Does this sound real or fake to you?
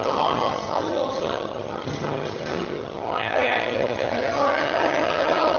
fake